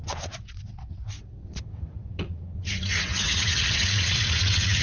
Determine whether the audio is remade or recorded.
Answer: remade